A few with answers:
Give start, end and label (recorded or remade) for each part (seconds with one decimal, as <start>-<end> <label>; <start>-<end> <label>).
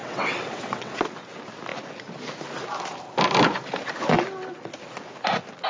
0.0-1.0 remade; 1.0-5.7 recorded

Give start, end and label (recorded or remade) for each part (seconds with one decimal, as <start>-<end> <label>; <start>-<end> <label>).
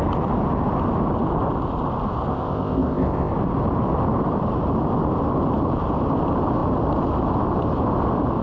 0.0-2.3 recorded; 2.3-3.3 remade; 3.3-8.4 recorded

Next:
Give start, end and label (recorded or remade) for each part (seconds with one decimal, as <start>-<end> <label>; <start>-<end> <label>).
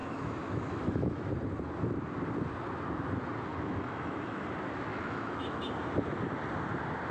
0.0-1.3 remade; 1.3-3.5 recorded; 3.5-4.4 remade; 4.4-4.9 recorded; 4.9-5.7 remade; 5.7-7.1 recorded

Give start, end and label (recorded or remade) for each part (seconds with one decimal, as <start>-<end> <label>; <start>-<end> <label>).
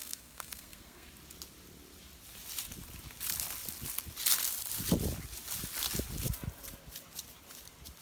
0.0-1.1 remade; 1.1-8.0 recorded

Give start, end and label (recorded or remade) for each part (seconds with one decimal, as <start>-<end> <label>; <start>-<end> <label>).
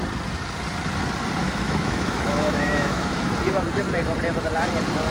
0.0-1.4 recorded; 1.4-3.3 remade; 3.3-5.1 recorded